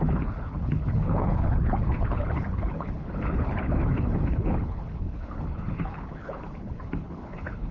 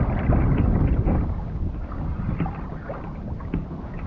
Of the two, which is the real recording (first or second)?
second